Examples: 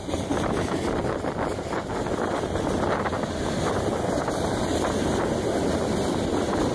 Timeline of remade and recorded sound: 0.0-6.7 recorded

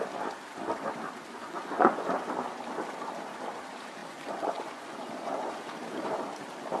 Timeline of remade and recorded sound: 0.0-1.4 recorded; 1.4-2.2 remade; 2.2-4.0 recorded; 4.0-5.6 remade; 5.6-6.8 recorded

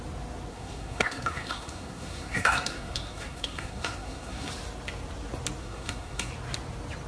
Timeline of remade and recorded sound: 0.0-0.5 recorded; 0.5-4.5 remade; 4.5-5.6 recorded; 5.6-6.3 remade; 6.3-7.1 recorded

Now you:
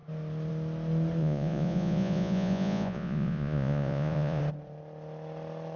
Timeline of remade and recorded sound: 0.0-1.2 recorded; 1.2-4.4 remade; 4.4-5.8 recorded

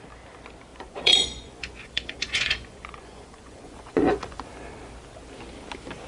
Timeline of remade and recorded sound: 0.0-0.7 recorded; 0.7-4.4 remade; 4.4-6.1 recorded

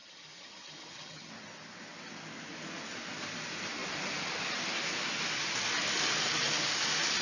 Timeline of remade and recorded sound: 0.0-1.3 remade; 1.3-7.2 recorded

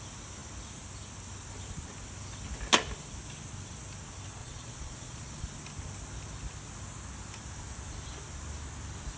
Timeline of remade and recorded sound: 0.0-4.4 recorded; 4.4-5.4 remade; 5.4-9.2 recorded